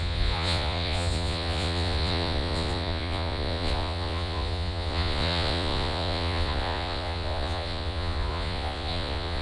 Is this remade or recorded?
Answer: remade